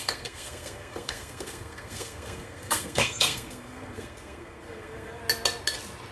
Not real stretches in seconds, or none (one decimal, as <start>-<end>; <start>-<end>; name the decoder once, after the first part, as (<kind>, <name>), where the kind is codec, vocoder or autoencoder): 0.0-5.2 (codec, SNAC)